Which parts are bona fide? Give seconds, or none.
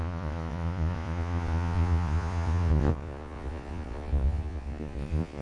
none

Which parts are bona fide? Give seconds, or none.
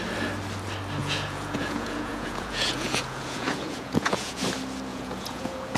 0.0-1.0; 4.4-4.9